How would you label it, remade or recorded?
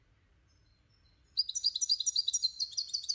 recorded